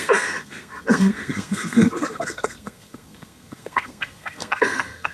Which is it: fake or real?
fake